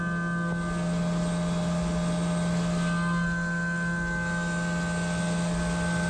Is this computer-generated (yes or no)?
no